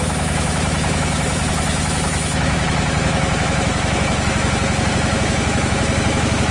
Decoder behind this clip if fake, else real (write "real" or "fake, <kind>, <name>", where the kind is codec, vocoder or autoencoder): fake, autoencoder, DAC-VAE